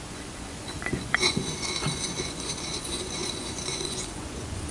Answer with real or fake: fake